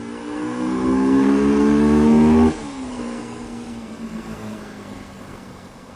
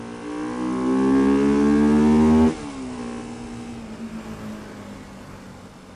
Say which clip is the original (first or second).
second